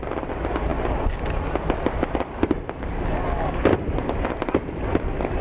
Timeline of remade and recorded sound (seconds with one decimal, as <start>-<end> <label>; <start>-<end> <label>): 0.0-5.4 recorded